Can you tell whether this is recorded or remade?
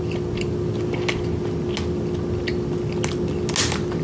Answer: recorded